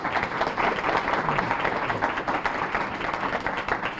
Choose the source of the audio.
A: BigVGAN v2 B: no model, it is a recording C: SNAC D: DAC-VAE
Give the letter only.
B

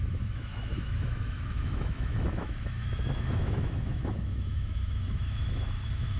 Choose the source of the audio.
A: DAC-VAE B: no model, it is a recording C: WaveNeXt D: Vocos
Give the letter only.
A